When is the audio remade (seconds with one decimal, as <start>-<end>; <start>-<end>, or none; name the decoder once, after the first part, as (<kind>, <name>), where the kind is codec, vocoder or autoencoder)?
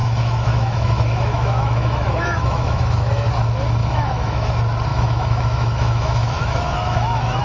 0.0-3.3 (autoencoder, DAC-VAE); 3.8-4.5; 4.9-7.4